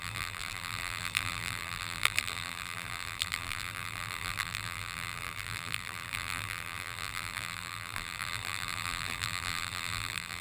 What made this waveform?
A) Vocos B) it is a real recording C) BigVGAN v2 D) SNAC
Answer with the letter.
C